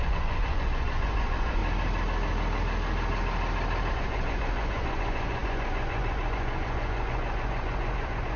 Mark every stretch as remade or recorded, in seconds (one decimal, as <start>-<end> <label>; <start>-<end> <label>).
0.0-1.6 remade; 1.6-3.9 recorded; 3.9-8.4 remade